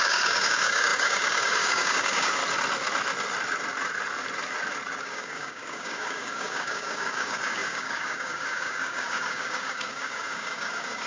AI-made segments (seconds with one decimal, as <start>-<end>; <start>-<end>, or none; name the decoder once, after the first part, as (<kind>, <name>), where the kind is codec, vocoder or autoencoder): 0.0-2.4 (codec, DAC); 5.0-11.1